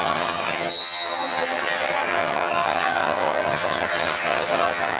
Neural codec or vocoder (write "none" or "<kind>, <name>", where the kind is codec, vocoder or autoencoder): vocoder, HiFi-GAN